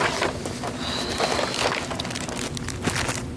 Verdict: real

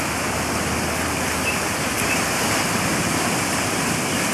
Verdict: fake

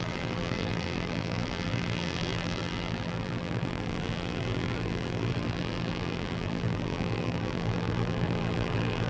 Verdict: fake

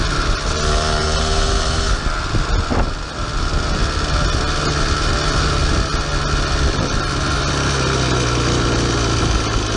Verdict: real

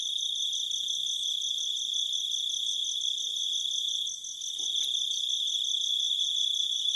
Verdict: real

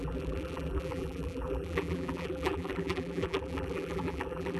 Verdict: fake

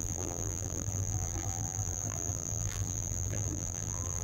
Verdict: fake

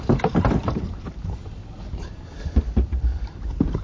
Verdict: fake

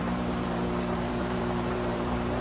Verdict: fake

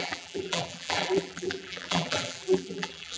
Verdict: fake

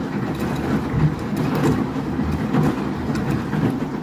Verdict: real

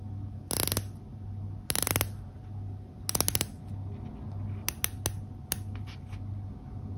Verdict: real